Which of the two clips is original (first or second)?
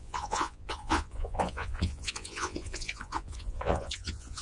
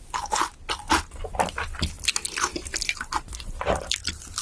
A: second